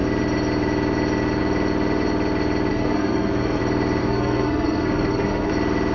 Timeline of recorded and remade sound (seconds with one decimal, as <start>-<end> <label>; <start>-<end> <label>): 0.0-2.7 recorded; 2.7-3.6 remade; 3.6-4.0 recorded; 4.0-5.5 remade; 5.5-5.9 recorded